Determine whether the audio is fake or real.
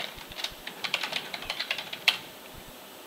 fake